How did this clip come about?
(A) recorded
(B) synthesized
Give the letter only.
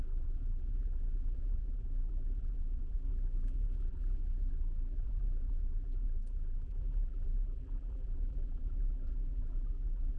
B